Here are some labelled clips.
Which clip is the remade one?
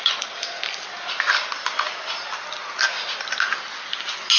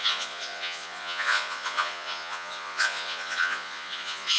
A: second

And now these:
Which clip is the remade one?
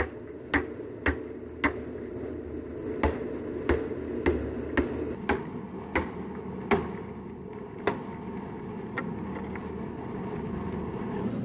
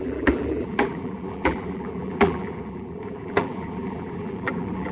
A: second